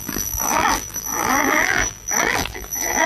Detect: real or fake fake